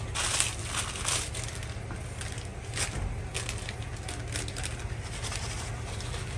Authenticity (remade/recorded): recorded